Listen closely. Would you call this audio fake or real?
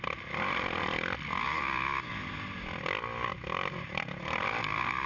real